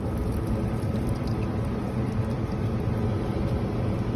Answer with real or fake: real